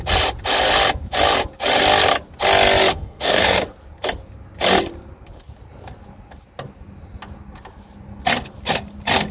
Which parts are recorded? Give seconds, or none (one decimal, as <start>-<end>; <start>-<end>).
0.0-2.9; 3.6-9.3